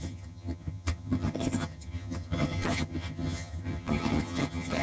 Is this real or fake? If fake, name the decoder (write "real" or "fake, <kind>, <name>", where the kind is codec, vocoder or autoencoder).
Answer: fake, vocoder, HiFi-GAN